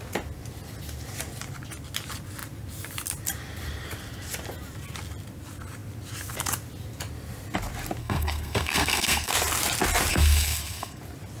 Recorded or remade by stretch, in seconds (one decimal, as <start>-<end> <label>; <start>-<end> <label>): 0.0-8.0 recorded; 8.0-9.3 remade; 9.3-10.1 recorded; 10.1-11.0 remade; 11.0-11.4 recorded